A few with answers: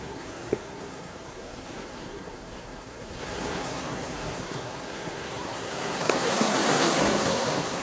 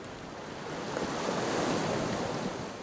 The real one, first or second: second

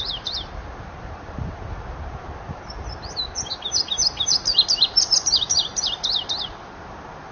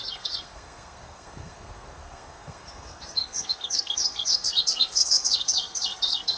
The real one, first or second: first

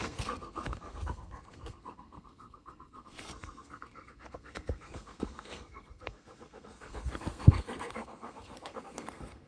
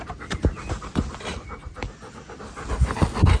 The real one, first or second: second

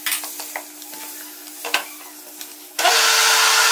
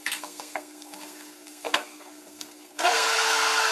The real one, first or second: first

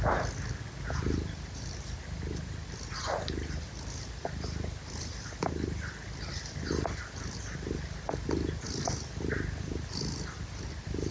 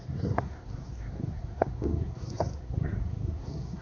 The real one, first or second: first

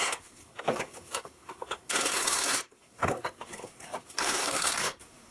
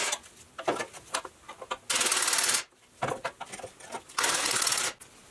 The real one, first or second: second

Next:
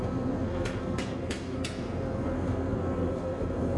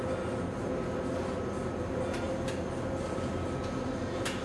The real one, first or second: second